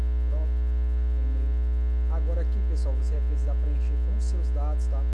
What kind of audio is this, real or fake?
real